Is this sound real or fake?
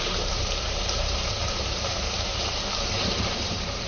fake